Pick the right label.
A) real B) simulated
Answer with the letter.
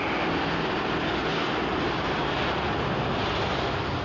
A